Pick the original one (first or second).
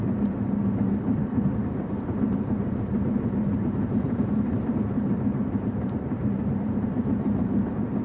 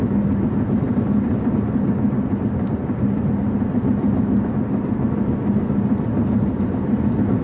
second